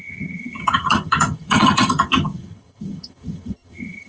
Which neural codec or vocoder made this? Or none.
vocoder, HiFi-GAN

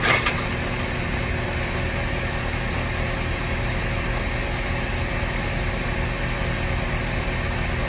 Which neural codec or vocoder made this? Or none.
none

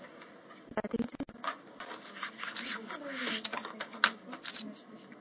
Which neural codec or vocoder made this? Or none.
none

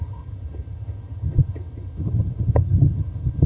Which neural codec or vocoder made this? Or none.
vocoder, HiFi-GAN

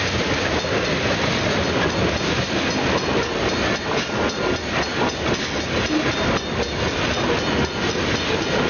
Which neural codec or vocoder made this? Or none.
none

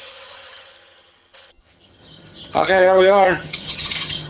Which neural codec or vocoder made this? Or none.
vocoder, HiFi-GAN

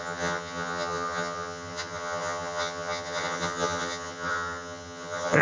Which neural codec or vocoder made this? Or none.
vocoder, HiFi-GAN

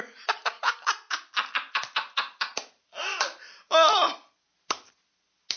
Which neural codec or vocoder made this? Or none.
none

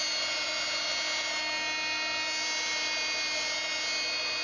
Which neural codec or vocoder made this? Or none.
none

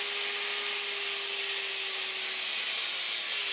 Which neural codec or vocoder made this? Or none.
none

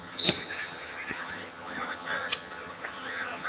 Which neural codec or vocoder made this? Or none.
vocoder, HiFi-GAN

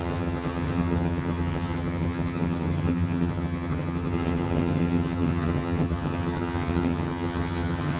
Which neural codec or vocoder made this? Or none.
vocoder, HiFi-GAN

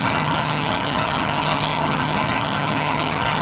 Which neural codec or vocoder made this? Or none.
vocoder, HiFi-GAN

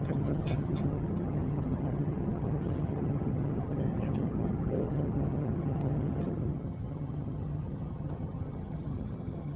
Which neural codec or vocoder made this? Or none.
vocoder, HiFi-GAN